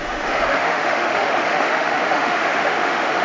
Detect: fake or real fake